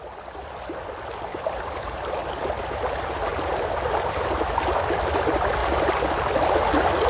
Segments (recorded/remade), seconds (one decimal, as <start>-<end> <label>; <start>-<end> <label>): 0.0-1.3 recorded; 1.3-2.1 remade; 2.1-3.3 recorded; 3.3-4.4 remade; 4.4-7.1 recorded